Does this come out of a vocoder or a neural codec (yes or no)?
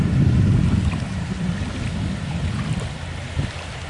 no